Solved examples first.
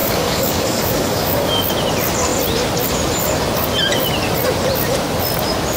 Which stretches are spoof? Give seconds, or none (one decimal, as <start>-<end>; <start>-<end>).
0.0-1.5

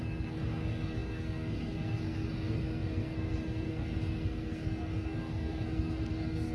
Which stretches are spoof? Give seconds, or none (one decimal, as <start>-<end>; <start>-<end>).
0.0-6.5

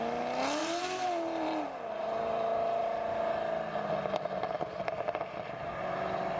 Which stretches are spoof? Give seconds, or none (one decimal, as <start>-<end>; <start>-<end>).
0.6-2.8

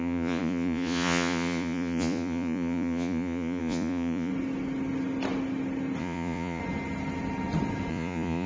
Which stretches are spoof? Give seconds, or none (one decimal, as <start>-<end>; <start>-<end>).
0.0-4.3; 6.0-6.6; 7.9-8.5